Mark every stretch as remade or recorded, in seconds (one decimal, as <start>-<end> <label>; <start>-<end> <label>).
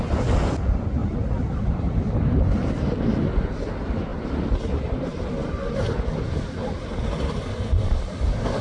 0.0-8.6 recorded